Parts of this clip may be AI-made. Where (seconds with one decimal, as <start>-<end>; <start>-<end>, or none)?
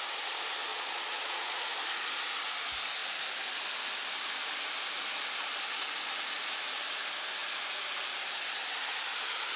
0.7-1.6